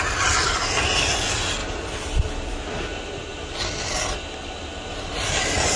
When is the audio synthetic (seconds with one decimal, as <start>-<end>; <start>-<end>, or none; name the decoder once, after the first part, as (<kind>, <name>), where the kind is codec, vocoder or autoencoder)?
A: 1.6-2.2 (vocoder, BigVGAN v2)